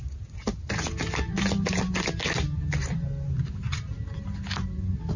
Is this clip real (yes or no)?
yes